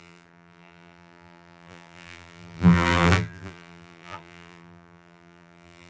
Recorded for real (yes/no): no